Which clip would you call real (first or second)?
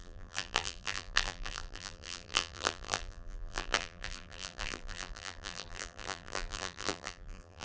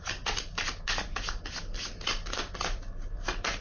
second